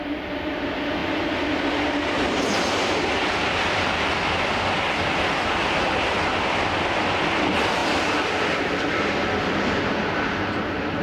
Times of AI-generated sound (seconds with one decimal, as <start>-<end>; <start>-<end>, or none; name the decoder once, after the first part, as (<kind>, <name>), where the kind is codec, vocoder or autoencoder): none

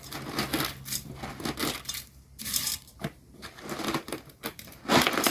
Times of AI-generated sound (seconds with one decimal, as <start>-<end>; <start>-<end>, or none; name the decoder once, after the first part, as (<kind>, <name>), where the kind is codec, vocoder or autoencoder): 1.6-4.8 (vocoder, BigVGAN v2)

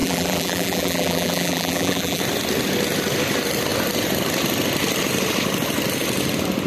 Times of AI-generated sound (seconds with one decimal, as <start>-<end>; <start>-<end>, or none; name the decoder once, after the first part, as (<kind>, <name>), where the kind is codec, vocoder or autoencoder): 0.0-2.2 (vocoder, BigVGAN v2)

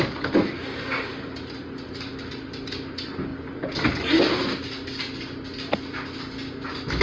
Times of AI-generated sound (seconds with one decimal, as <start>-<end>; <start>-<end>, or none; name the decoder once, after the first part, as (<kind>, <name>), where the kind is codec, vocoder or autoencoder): none

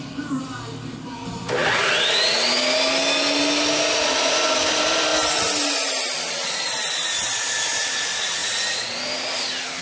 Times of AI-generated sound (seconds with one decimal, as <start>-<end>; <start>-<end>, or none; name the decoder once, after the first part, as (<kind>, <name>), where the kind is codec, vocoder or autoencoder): 0.0-1.6 (vocoder, BigVGAN v2); 3.9-5.1; 6.3-8.4; 8.9-9.8